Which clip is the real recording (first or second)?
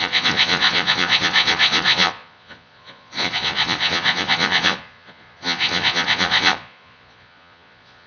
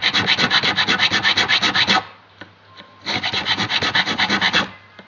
second